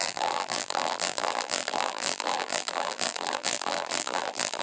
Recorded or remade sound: remade